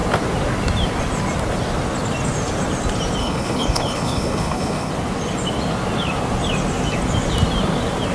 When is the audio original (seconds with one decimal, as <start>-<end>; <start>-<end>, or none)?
0.0-3.2; 4.9-8.1